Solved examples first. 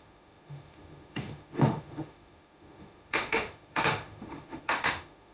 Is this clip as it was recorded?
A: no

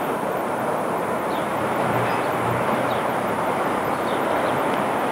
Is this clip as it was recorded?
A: no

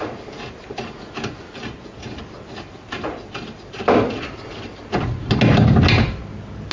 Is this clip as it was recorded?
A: yes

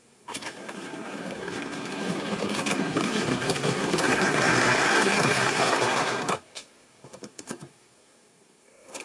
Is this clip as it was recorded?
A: no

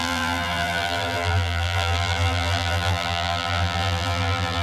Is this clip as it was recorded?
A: no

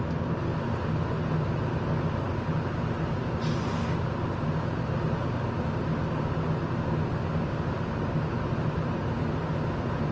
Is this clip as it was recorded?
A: yes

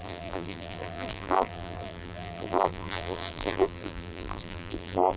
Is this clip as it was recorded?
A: no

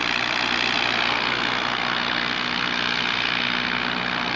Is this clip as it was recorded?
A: yes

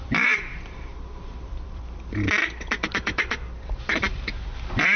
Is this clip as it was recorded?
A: no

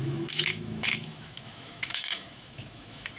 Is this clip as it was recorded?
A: no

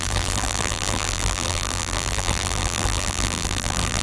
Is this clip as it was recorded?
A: no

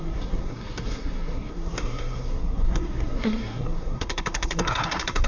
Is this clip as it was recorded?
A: no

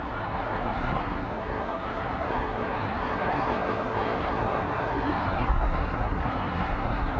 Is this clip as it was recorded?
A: no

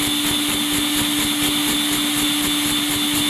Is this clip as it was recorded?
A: yes